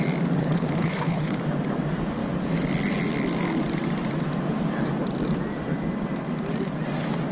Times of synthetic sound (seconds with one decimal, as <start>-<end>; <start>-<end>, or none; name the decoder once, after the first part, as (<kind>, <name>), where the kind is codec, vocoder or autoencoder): 0.4-1.4 (codec, HILCodec)